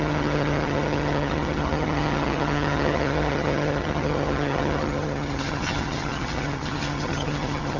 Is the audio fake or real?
fake